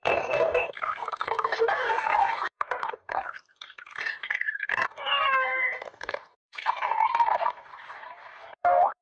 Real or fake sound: fake